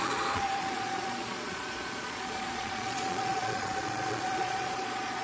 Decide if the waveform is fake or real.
fake